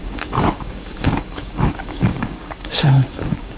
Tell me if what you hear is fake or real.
fake